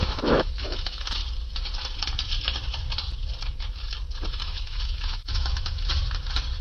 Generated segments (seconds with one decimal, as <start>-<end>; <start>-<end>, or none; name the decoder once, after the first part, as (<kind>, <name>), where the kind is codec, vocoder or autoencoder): 0.0-1.2 (autoencoder, DAC-VAE); 4.3-5.9